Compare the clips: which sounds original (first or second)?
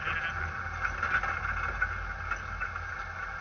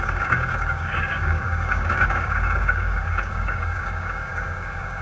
first